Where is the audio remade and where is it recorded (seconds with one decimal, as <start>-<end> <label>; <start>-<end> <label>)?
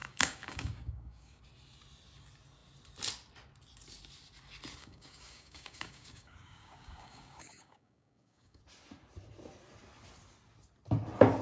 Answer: 0.0-1.4 remade; 1.4-4.8 recorded; 4.8-8.6 remade; 8.6-11.4 recorded